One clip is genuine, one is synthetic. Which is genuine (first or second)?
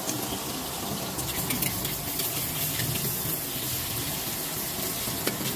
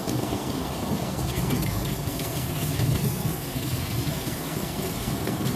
first